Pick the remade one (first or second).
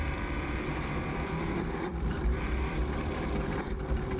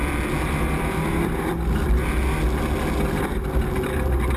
first